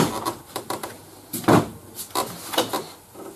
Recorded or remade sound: recorded